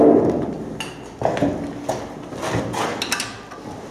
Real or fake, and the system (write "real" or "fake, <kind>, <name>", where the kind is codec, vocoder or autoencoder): real